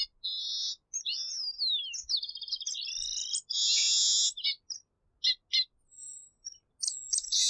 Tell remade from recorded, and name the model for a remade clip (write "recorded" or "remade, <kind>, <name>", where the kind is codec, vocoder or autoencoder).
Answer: recorded